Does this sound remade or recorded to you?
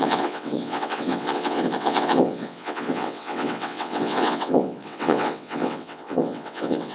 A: remade